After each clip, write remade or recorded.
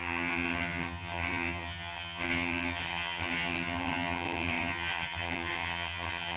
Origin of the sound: remade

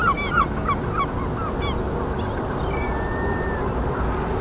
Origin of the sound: recorded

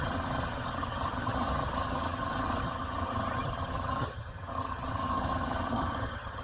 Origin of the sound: remade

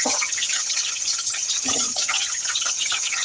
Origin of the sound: remade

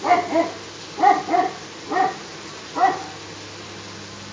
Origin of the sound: recorded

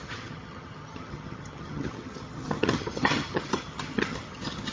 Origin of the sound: remade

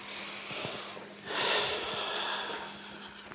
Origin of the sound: recorded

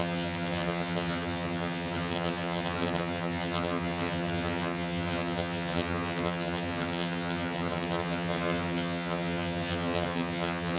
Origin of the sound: remade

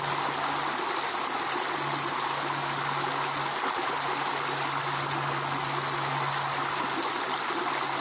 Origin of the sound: recorded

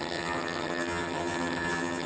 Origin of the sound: remade